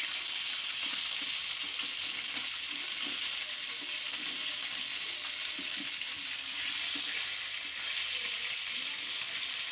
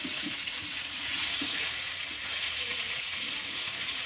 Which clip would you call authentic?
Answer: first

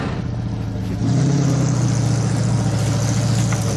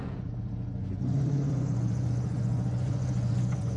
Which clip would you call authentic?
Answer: first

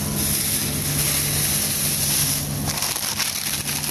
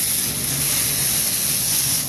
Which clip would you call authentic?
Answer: first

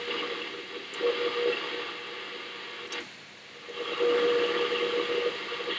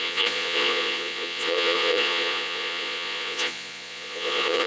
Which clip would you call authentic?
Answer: first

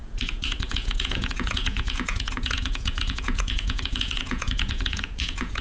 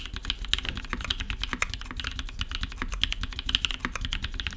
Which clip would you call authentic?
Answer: second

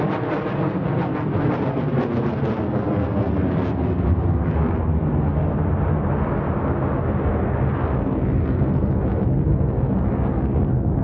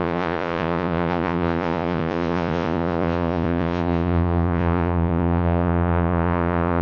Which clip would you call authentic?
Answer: first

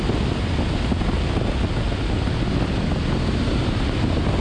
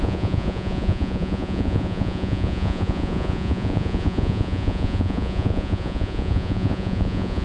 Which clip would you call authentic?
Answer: first